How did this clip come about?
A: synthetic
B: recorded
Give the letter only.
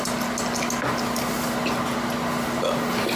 B